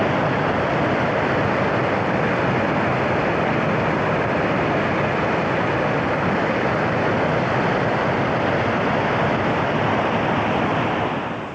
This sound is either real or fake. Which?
real